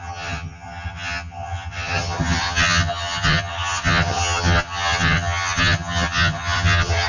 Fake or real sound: fake